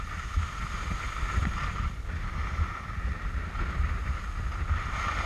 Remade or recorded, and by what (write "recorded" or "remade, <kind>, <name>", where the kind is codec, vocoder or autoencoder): recorded